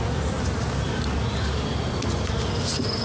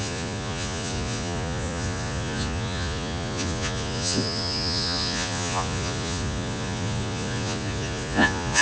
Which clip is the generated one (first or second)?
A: second